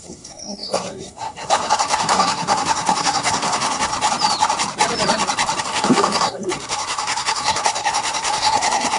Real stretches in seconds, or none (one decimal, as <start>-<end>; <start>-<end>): 3.9-5.6